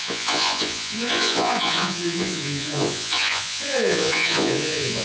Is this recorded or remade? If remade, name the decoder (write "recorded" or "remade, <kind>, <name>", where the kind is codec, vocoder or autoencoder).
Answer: remade, vocoder, Vocos